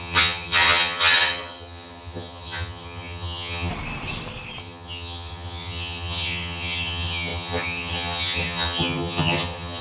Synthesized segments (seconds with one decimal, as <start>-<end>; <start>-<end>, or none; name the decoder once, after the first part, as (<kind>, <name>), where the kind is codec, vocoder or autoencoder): 0.0-3.7 (vocoder, HiFi-GAN); 4.6-9.8